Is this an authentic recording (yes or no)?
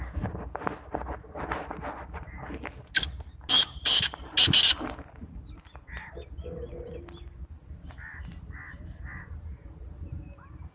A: yes